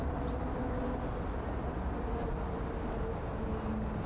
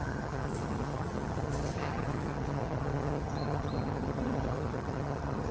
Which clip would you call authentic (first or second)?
first